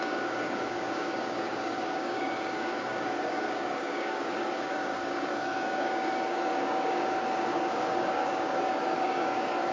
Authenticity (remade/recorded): remade